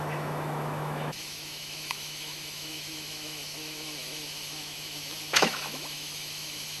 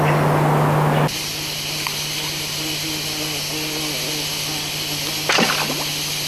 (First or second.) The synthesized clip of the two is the first